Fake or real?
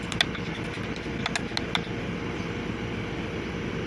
real